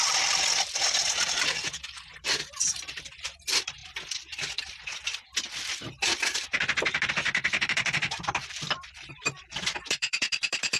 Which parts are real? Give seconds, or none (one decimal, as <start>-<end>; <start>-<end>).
3.8-7.1